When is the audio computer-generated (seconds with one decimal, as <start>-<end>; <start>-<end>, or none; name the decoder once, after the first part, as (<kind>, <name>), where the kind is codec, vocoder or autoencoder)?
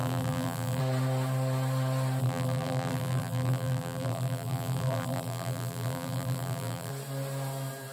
0.0-0.8 (vocoder, BigVGAN v2); 2.2-6.9